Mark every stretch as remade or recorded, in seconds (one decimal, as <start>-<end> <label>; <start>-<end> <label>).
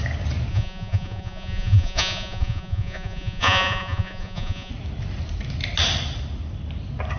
0.0-0.5 recorded; 0.5-4.7 remade; 4.7-7.2 recorded